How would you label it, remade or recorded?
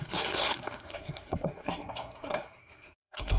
remade